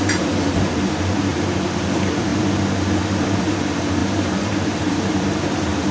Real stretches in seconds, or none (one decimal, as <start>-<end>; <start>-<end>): none